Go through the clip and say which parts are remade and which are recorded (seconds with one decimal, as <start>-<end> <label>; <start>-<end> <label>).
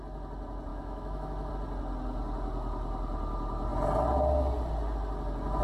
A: 0.0-0.7 recorded; 0.7-1.5 remade; 1.5-5.6 recorded